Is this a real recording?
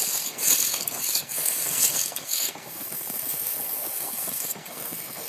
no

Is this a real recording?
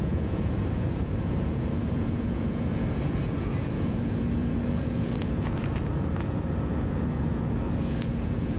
no